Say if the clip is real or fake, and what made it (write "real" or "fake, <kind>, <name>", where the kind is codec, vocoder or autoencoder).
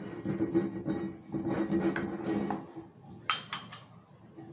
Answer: real